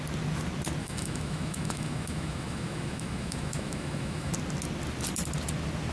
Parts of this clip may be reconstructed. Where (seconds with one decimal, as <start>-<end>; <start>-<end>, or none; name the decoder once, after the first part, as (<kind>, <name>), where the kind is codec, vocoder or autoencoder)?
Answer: 0.8-4.3 (autoencoder, DAC-VAE)